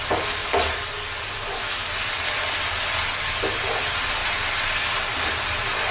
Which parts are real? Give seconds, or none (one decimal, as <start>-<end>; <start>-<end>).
0.0-5.9